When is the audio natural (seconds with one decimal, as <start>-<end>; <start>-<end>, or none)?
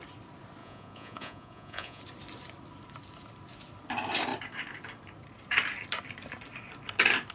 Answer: 0.0-0.6; 2.0-7.3